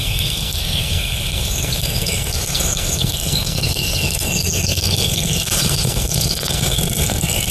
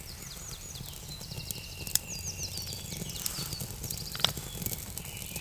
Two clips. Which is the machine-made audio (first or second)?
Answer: first